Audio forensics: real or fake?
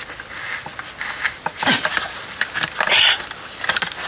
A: real